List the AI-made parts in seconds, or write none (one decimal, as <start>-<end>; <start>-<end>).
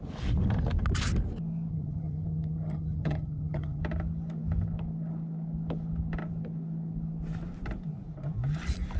1.7-3.8